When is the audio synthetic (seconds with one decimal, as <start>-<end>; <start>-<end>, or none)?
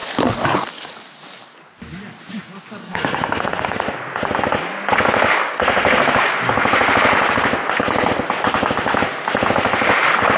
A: 2.8-3.8; 5.5-6.1